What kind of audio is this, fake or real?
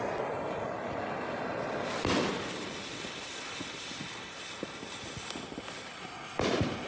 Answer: real